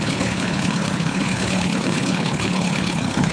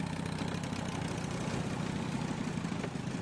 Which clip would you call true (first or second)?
second